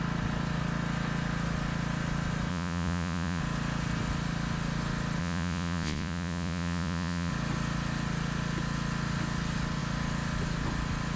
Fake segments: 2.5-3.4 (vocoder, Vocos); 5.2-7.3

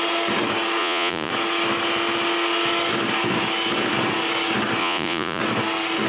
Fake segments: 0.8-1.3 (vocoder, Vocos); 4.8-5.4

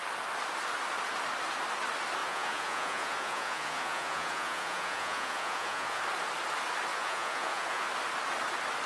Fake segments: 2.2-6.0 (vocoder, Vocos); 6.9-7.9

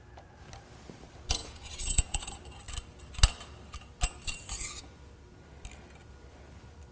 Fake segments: 1.4-2.4 (vocoder, Vocos)